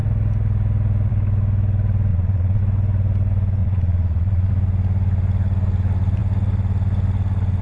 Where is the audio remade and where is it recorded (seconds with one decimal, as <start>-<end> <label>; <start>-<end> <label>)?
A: 0.0-2.1 recorded; 2.1-2.6 remade; 2.6-3.6 recorded; 3.6-4.5 remade; 4.5-7.6 recorded